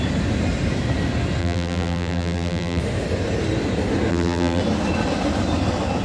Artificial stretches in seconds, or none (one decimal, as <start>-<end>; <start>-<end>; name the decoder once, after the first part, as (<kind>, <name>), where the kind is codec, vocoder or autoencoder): 1.4-2.8 (vocoder, BigVGAN v2); 4.1-4.6